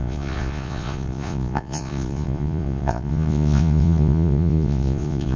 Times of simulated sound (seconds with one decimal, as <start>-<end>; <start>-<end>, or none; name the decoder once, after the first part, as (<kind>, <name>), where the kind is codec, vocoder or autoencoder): 0.0-5.4 (vocoder, Vocos)